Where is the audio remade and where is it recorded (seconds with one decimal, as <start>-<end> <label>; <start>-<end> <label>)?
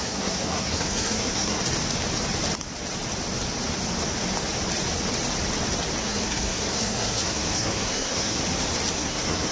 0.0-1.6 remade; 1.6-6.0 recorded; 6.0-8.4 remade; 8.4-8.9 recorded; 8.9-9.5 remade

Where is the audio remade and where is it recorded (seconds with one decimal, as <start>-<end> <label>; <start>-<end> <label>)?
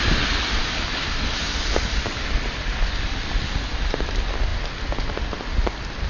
0.0-6.1 recorded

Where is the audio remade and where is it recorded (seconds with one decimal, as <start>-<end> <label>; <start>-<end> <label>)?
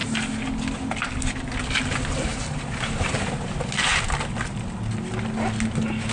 0.0-6.1 recorded